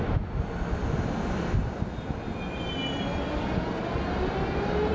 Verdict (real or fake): real